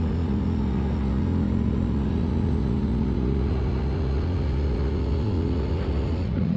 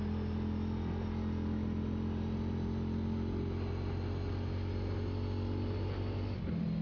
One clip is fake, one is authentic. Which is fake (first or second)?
first